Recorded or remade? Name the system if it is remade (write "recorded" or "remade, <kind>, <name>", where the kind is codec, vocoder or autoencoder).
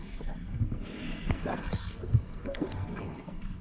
remade, codec, SNAC